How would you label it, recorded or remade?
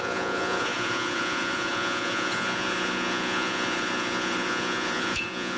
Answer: remade